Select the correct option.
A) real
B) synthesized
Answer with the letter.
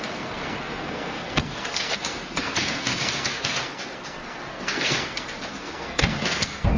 B